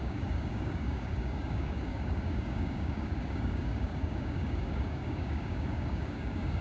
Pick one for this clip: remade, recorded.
remade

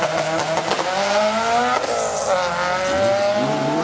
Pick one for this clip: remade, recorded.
recorded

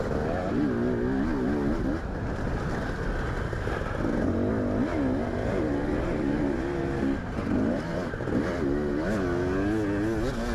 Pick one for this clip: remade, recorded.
recorded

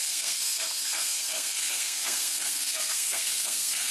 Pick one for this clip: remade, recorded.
remade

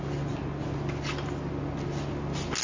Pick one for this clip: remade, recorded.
recorded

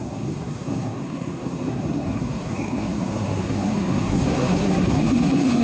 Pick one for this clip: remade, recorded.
remade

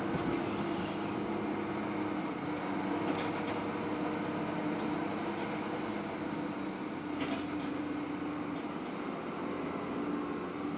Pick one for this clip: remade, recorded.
recorded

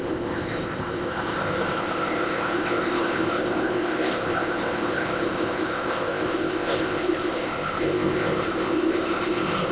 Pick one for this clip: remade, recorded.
remade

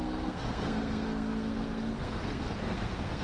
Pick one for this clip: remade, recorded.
remade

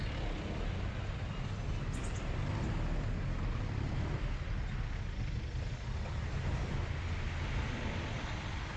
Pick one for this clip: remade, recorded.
recorded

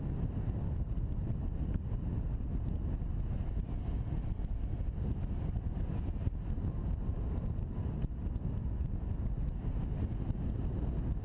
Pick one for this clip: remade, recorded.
recorded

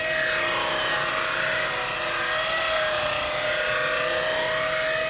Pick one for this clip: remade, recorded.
recorded